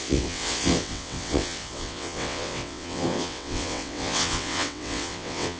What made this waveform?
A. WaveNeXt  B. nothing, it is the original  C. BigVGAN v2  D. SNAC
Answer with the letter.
A